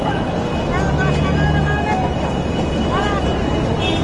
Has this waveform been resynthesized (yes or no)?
no